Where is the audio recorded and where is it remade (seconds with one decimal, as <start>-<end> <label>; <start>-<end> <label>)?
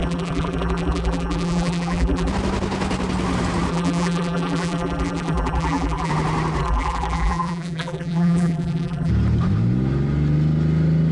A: 0.0-2.3 remade; 2.3-3.7 recorded; 3.7-6.1 remade; 6.1-6.6 recorded; 6.6-9.1 remade; 9.1-11.1 recorded